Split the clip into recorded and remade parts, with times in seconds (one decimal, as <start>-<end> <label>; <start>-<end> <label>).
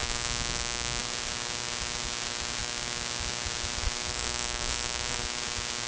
0.0-1.0 remade; 1.0-4.1 recorded; 4.1-5.2 remade; 5.2-5.9 recorded